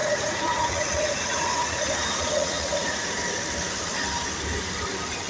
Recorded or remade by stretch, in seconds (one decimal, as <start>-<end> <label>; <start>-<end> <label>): 0.0-3.2 remade; 3.2-5.3 recorded